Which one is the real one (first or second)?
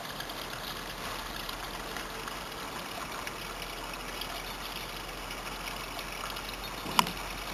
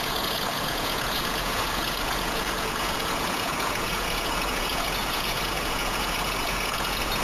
first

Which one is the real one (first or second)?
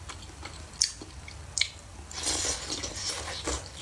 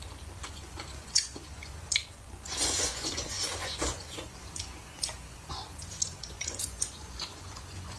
first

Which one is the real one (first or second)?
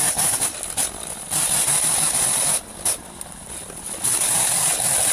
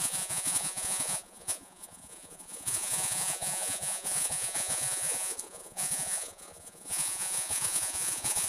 first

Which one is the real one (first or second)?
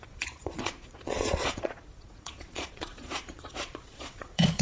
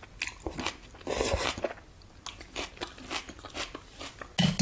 second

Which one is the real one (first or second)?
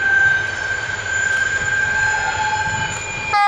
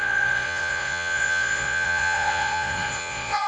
first